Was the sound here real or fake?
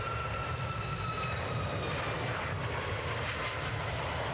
real